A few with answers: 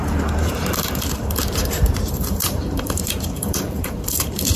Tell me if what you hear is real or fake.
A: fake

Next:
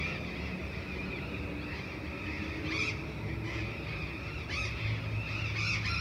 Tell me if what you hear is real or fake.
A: real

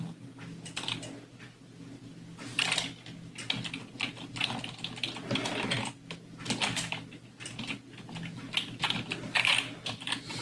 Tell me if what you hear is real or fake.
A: real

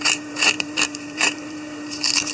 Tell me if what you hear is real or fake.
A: fake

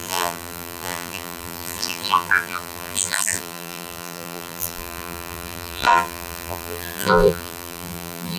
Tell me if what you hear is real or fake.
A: fake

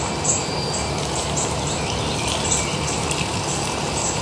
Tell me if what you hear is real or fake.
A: real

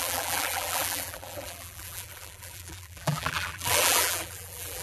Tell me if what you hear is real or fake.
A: fake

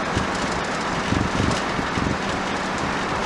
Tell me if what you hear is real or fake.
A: fake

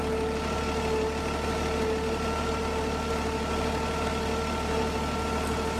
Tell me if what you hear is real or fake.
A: real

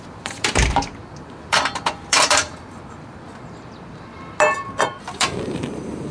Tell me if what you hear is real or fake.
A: fake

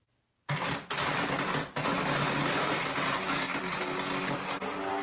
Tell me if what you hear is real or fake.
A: real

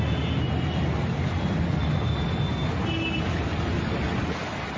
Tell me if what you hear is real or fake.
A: real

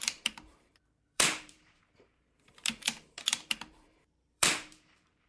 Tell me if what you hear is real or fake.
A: fake